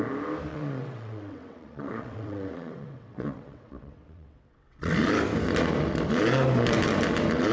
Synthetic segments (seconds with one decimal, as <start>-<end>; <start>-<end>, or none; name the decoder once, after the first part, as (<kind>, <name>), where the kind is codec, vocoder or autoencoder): 0.5-4.9 (vocoder, WaveNeXt)